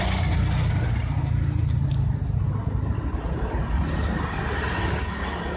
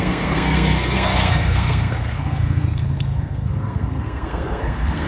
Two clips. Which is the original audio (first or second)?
first